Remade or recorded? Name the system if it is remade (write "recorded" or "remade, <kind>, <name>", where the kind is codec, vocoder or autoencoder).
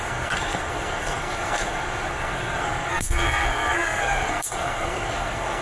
remade, codec, SNAC